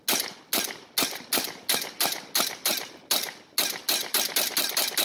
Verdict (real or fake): real